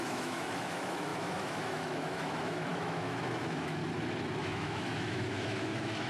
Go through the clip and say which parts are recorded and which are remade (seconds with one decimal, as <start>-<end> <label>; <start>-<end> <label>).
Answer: 0.0-3.8 remade; 3.8-4.4 recorded; 4.4-6.1 remade

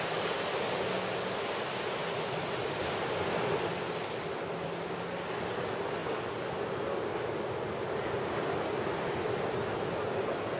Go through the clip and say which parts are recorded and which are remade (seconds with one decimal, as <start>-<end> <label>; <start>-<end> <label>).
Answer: 0.0-10.6 recorded

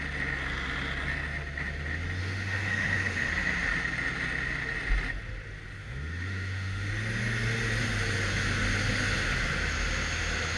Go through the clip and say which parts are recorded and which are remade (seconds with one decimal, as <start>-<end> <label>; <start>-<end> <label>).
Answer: 0.0-2.2 recorded; 2.2-3.3 remade; 3.3-5.8 recorded; 5.8-6.9 remade; 6.9-10.6 recorded

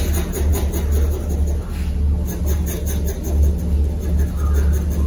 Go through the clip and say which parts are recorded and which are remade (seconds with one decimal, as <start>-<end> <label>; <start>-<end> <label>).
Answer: 0.0-5.1 recorded

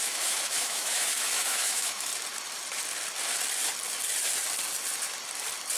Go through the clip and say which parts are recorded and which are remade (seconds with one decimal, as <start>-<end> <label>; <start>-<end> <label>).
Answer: 0.0-2.1 remade; 2.1-5.8 recorded

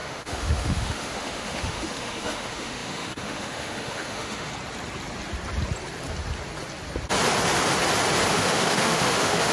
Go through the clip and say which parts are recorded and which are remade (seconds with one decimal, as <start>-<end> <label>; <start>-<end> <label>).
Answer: 0.0-4.5 remade; 4.5-8.3 recorded; 8.3-9.5 remade